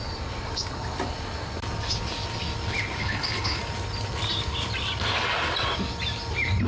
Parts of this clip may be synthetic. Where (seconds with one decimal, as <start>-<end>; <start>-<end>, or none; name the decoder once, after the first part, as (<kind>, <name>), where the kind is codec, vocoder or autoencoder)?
3.0-3.6 (codec, HILCodec)